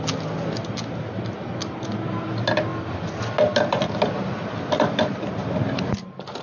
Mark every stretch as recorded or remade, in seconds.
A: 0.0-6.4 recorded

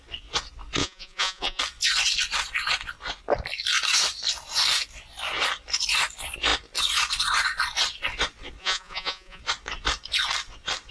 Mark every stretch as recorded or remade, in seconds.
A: 0.0-0.8 recorded; 0.8-1.6 remade; 1.6-8.6 recorded; 8.6-9.4 remade; 9.4-10.9 recorded

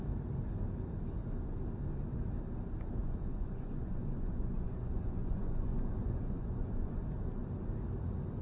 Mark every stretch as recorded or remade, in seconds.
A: 0.0-3.0 recorded; 3.0-7.1 remade; 7.1-8.4 recorded

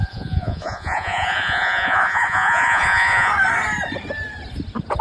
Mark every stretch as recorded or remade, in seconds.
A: 0.0-3.3 remade; 3.3-5.0 recorded